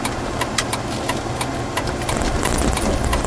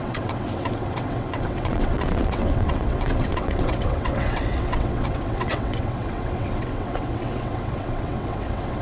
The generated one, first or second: second